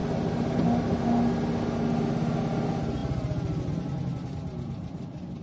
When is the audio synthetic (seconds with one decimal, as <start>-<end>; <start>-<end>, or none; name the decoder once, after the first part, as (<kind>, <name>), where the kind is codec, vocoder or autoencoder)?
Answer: none